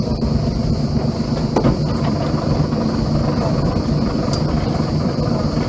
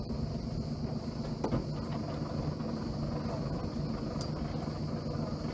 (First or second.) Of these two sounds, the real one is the second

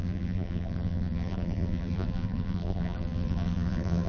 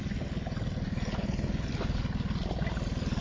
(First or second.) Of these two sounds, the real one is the second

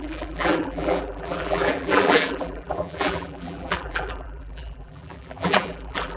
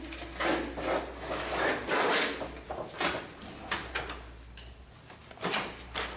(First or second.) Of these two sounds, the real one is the second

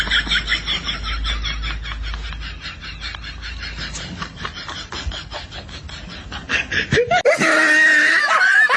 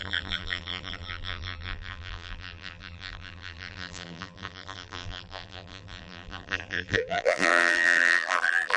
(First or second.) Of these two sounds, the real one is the first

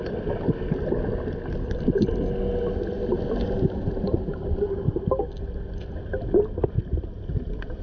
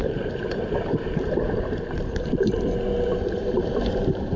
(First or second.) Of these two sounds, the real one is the first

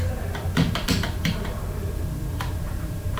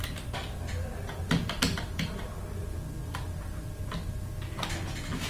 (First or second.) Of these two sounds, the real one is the second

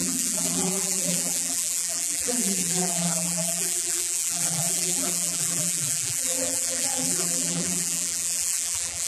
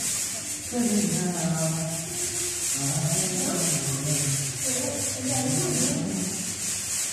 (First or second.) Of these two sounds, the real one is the second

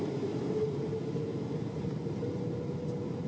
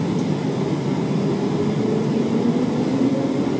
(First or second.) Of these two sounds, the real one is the second